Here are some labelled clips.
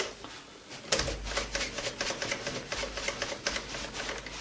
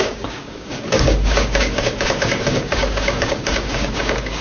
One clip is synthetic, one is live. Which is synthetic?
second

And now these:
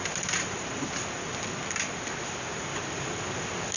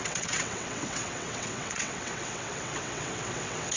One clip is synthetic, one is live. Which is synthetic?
second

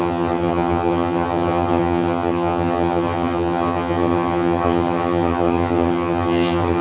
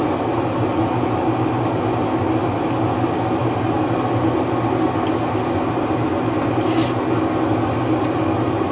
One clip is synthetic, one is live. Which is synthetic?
first